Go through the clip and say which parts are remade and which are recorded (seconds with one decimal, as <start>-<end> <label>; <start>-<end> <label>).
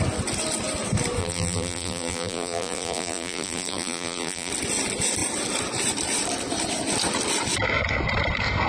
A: 0.0-1.2 recorded; 1.2-4.5 remade; 4.5-8.7 recorded